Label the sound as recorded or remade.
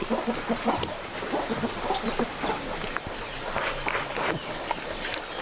recorded